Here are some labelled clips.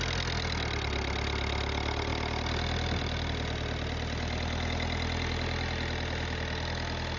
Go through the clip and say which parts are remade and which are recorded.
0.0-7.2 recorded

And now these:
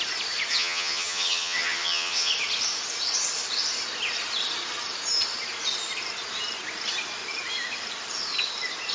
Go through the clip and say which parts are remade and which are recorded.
0.0-0.5 recorded; 0.5-2.3 remade; 2.3-8.9 recorded

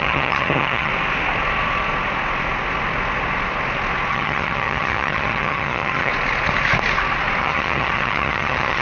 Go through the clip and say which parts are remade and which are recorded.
0.0-0.9 remade; 0.9-4.1 recorded; 4.1-6.1 remade; 6.1-7.4 recorded; 7.4-8.8 remade

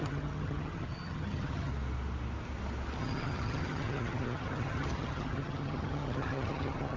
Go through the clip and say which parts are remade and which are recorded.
0.0-1.7 remade; 1.7-3.0 recorded; 3.0-7.0 remade